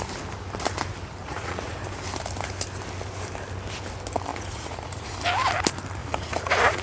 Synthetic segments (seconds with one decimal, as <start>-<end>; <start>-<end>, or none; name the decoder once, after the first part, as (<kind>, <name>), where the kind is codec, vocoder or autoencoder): 1.2-1.7 (vocoder, Vocos); 4.3-5.1; 6.0-6.8